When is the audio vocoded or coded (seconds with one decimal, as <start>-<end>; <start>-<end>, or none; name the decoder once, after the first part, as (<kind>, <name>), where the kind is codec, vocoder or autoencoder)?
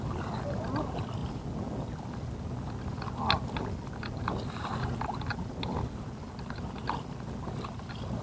none